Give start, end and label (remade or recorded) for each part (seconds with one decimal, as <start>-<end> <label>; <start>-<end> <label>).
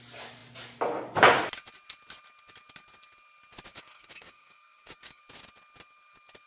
0.0-3.7 recorded; 3.7-5.2 remade; 5.2-6.5 recorded